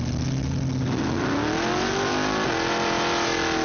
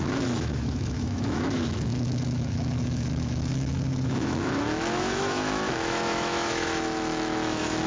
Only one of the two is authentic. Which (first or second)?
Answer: first